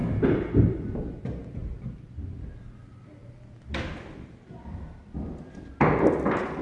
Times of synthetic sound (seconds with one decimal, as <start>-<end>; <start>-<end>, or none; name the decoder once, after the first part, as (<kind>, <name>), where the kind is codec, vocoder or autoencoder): 0.0-1.2 (vocoder, BigVGAN v2); 1.6-2.8